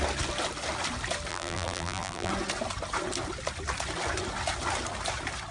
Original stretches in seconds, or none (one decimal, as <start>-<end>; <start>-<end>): 0.0-1.3; 2.3-5.5